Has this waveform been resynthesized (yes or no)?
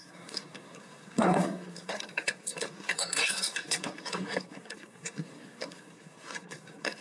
yes